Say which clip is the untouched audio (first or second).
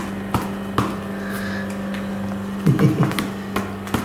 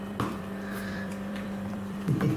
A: first